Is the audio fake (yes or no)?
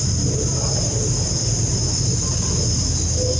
no